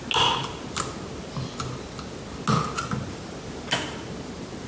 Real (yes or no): yes